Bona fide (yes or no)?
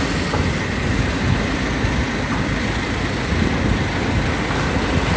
yes